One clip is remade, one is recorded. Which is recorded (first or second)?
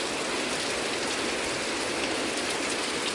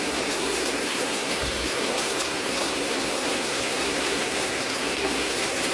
first